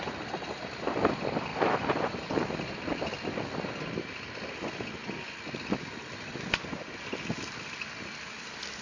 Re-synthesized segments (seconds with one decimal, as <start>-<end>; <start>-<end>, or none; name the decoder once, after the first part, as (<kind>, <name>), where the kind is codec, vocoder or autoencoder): none